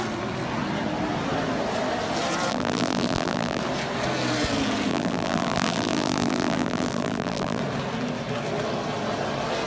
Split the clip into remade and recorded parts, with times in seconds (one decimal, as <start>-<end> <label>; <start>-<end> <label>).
0.0-2.5 recorded; 2.5-3.6 remade; 3.6-4.9 recorded; 4.9-7.6 remade; 7.6-9.7 recorded